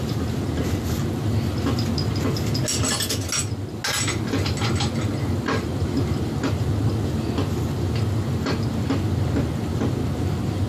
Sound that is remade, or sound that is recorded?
recorded